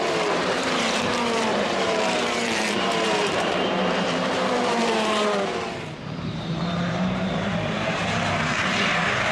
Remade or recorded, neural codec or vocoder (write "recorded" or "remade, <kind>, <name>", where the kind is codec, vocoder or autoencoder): remade, vocoder, BigVGAN v2